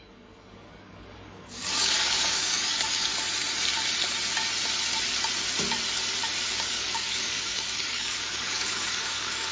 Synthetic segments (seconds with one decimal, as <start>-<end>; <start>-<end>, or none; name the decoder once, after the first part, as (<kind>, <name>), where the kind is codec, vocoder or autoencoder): 0.0-3.1 (codec, DAC); 6.5-9.5